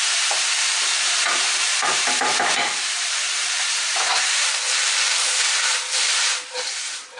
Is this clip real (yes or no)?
no